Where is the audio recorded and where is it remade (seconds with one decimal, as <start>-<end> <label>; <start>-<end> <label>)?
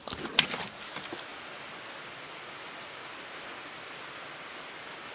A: 0.0-5.1 recorded